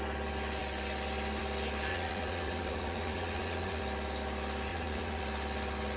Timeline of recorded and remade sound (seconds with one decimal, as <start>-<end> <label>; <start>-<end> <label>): 0.0-1.9 recorded; 1.9-3.8 remade; 3.8-4.7 recorded; 4.7-5.2 remade; 5.2-6.0 recorded